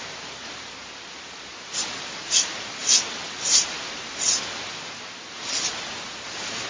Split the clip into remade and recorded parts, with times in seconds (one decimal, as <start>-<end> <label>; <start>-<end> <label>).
0.0-6.7 recorded